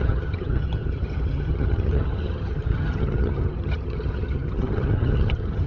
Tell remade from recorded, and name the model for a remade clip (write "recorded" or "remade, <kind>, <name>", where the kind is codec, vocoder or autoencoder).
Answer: remade, vocoder, HiFi-GAN